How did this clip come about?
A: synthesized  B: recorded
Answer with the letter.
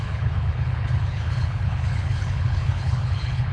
A